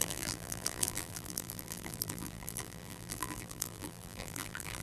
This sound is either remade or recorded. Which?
remade